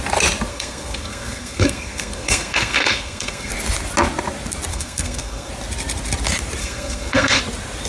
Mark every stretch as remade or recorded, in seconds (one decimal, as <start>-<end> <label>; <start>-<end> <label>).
0.0-0.5 recorded; 0.5-3.5 remade; 3.5-4.7 recorded; 4.7-5.5 remade; 5.5-6.6 recorded; 6.6-7.4 remade; 7.4-7.9 recorded